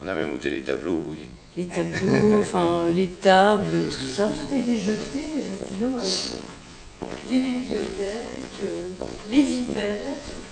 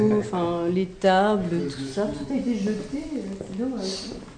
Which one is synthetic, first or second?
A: first